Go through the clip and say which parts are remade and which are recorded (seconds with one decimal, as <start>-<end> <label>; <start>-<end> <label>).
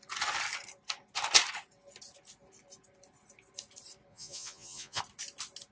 0.0-4.1 recorded; 4.1-5.0 remade; 5.0-5.7 recorded